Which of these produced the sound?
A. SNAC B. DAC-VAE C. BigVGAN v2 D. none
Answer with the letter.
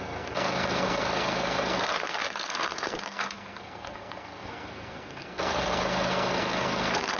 A